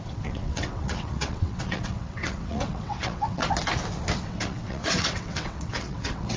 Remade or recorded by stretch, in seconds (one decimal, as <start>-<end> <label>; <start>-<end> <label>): 0.0-3.4 remade; 3.4-4.2 recorded; 4.2-6.4 remade